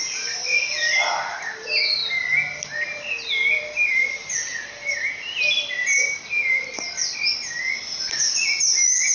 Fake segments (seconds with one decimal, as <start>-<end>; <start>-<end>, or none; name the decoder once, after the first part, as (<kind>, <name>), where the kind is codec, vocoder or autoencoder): none

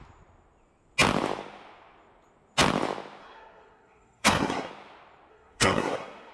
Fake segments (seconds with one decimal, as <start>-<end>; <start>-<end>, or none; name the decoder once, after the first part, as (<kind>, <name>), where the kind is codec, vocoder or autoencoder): 3.2-4.7 (codec, SNAC); 5.3-6.3

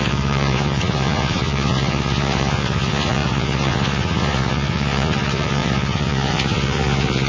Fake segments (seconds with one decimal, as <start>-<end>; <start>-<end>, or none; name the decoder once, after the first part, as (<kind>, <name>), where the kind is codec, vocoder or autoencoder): 0.0-7.3 (vocoder, Vocos)

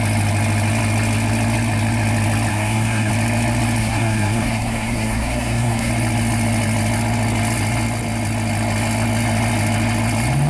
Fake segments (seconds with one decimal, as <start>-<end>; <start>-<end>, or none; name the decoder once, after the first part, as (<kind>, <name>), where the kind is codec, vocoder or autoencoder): 2.5-3.1 (codec, SNAC); 3.8-5.9

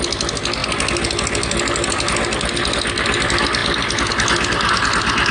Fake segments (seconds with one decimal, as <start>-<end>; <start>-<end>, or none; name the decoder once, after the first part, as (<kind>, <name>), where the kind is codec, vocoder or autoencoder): none

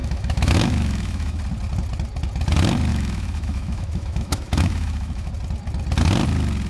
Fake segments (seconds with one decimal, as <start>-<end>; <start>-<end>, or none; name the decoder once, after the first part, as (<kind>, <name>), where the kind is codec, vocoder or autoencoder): 0.0-1.4 (autoencoder, DAC-VAE); 2.9-5.3

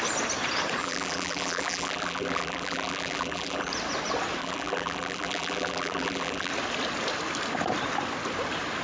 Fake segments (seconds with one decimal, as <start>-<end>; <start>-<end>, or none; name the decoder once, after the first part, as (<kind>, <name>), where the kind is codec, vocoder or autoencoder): 0.8-3.7 (vocoder, BigVGAN v2); 4.4-6.5